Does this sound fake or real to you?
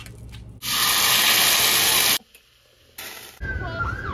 real